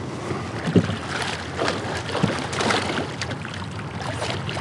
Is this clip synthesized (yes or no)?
no